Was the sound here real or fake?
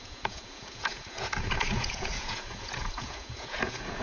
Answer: fake